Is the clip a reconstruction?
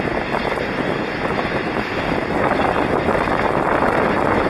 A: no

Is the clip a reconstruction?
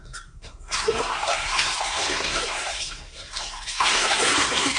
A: yes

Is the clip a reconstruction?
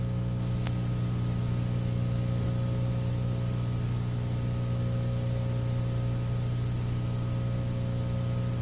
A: no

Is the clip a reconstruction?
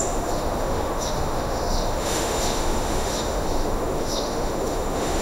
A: yes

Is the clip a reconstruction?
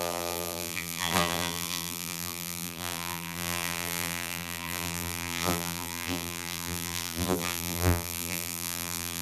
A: yes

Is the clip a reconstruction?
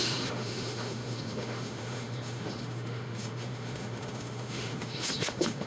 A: yes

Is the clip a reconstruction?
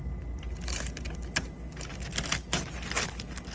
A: no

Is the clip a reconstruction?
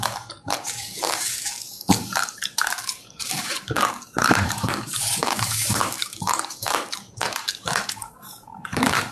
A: yes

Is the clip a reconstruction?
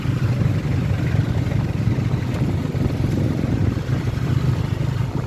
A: no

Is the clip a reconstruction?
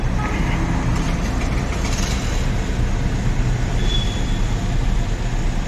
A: no